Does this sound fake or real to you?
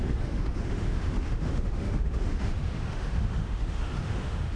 fake